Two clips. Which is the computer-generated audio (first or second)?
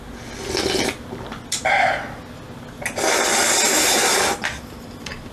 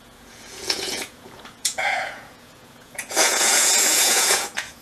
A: second